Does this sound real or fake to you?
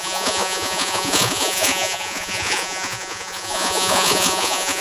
fake